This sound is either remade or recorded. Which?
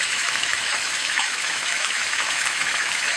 remade